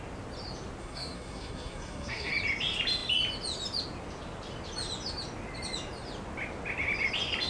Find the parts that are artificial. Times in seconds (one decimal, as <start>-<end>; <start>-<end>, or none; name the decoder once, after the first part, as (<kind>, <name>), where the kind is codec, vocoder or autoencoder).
0.8-2.3 (codec, SNAC)